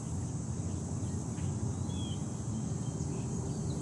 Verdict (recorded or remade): recorded